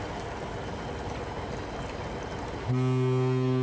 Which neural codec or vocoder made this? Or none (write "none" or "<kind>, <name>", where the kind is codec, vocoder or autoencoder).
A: none